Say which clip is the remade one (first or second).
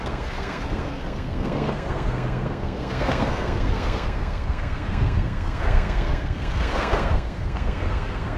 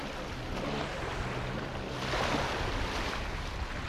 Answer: first